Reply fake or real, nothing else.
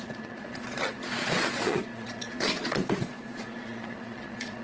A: fake